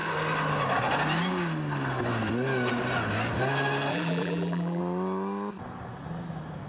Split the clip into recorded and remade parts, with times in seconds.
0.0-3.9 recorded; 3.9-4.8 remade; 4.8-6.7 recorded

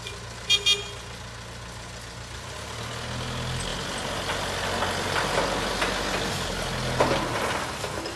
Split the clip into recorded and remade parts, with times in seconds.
0.0-8.2 recorded